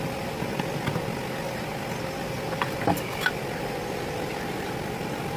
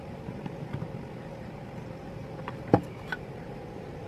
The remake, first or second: second